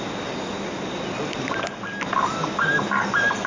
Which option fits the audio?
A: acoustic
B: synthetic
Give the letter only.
A